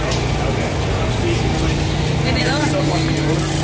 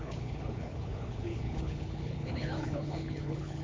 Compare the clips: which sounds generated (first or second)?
second